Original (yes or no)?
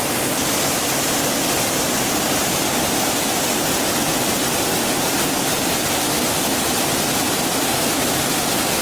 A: yes